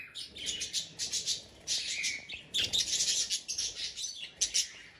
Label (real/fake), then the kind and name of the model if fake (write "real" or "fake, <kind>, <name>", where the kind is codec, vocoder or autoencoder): real